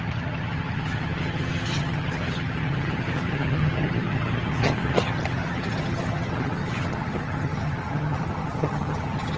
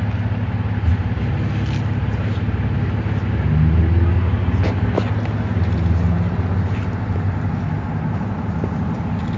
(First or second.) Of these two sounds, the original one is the second